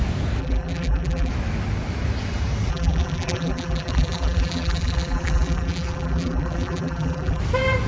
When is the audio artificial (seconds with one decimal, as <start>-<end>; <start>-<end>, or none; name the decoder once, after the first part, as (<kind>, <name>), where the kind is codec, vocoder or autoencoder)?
0.4-1.3 (vocoder, BigVGAN v2); 2.7-7.4